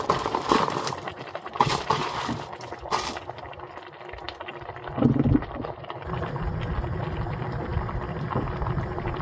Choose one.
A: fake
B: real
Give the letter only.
B